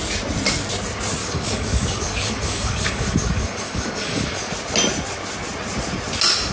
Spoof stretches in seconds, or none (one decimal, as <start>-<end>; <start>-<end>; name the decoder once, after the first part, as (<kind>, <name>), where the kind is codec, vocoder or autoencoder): 1.2-4.5 (codec, DAC)